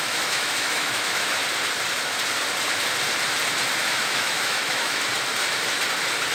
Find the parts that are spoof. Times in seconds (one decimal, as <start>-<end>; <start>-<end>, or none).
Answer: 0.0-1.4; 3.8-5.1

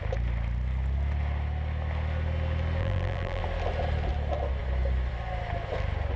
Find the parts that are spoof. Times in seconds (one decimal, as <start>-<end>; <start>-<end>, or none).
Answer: 2.8-3.4

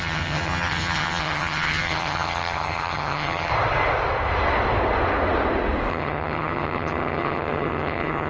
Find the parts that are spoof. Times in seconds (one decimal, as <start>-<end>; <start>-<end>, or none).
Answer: 0.0-3.5; 5.9-8.3